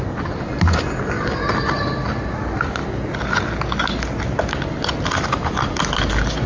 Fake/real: real